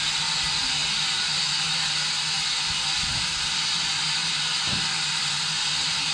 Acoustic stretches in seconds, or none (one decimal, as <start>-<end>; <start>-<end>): 0.0-6.1